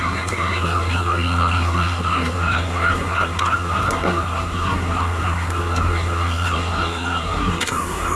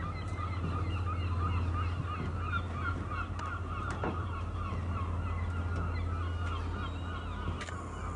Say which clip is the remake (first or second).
first